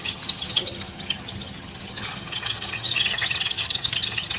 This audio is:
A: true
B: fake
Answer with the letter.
B